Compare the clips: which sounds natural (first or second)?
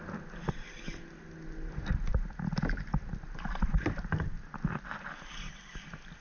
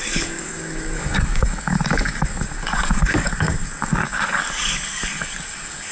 first